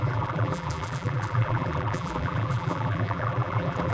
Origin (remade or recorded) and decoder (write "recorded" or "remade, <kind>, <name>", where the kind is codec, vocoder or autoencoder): remade, vocoder, BigVGAN v2